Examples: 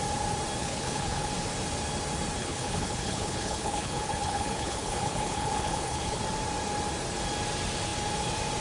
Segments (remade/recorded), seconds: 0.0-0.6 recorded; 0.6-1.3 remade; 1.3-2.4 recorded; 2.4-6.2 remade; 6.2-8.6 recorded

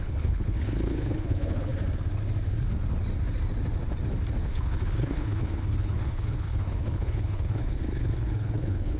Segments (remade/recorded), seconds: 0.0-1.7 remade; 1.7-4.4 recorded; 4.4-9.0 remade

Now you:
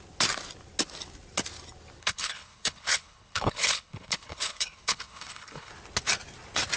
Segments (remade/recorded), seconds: 0.0-2.0 recorded; 2.0-5.7 remade; 5.7-6.8 recorded

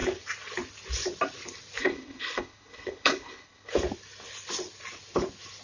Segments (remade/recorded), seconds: 0.0-1.8 recorded; 1.8-3.7 remade; 3.7-5.6 recorded

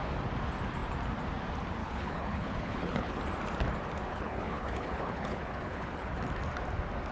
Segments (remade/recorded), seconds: 0.0-1.8 recorded; 1.8-3.2 remade; 3.2-4.1 recorded; 4.1-6.2 remade; 6.2-7.1 recorded

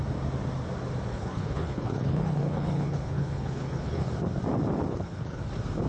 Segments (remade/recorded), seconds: 0.0-1.1 recorded; 1.1-4.1 remade; 4.1-4.9 recorded; 4.9-5.5 remade; 5.5-5.9 recorded

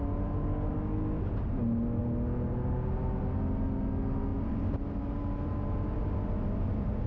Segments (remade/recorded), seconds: 0.0-7.1 recorded

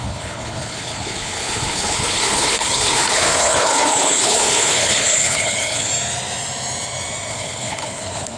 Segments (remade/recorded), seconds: 0.0-5.9 remade; 5.9-7.3 recorded; 7.3-8.4 remade